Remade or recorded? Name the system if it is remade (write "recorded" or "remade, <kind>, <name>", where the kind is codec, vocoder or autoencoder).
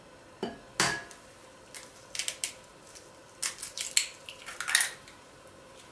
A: recorded